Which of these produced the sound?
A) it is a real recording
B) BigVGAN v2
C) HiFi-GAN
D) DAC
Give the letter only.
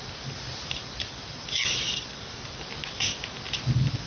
A